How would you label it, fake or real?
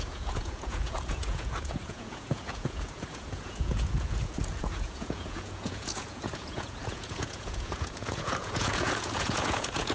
fake